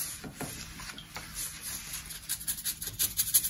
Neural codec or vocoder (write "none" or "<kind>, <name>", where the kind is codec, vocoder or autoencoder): none